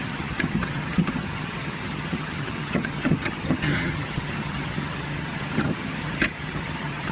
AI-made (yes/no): yes